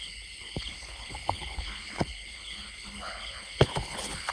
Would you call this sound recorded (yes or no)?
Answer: no